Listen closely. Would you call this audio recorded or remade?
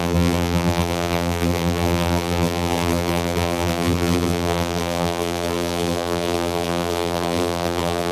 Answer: remade